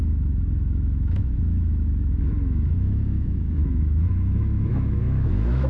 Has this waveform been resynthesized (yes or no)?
yes